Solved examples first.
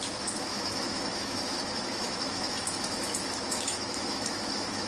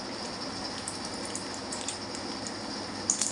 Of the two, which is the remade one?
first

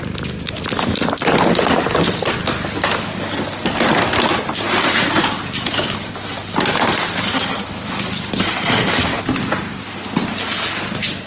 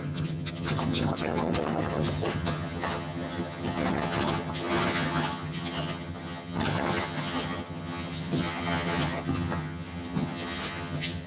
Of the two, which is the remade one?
second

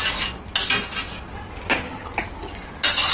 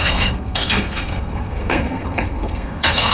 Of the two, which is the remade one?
second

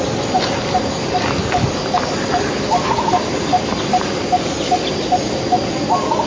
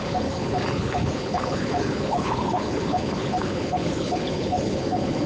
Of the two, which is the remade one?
second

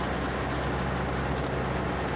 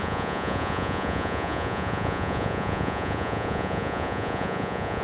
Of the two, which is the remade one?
second